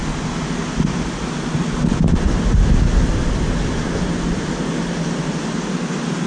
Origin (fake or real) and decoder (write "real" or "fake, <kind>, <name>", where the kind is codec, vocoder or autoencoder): real